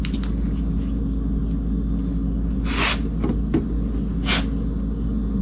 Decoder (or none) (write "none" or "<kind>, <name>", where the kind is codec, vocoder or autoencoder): none